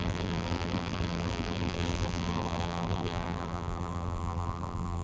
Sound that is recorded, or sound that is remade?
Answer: remade